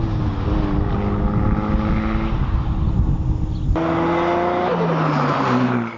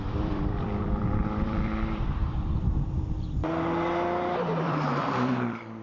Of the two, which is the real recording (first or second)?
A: first